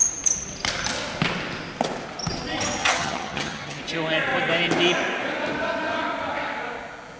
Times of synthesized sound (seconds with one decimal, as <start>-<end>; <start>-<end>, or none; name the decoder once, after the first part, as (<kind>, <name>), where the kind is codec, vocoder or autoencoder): 2.8-3.8 (vocoder, HiFi-GAN)